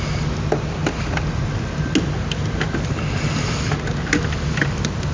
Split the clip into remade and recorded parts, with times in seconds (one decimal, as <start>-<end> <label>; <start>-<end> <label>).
0.0-5.1 recorded